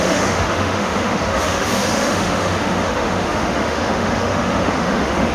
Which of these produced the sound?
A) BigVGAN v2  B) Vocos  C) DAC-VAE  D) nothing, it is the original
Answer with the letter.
C